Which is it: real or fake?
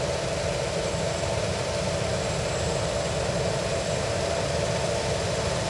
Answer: real